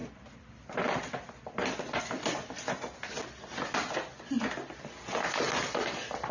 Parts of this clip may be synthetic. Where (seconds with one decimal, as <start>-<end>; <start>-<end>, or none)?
none